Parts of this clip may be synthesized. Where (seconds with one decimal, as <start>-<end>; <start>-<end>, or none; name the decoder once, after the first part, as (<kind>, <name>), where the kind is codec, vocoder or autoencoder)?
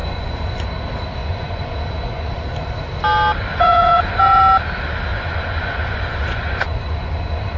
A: 0.0-0.7 (vocoder, Vocos); 1.2-2.7; 3.5-4.4; 5.1-7.6